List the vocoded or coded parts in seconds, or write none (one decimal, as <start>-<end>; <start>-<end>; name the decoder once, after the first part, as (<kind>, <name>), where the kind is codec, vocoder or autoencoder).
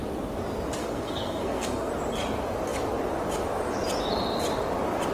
0.8-1.9 (codec, SNAC)